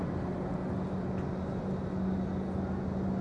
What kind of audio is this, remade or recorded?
recorded